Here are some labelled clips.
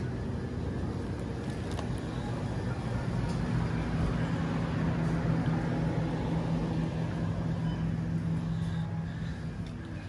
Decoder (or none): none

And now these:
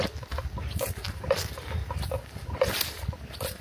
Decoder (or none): none